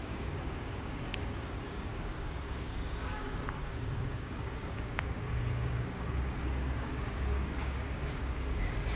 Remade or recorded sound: remade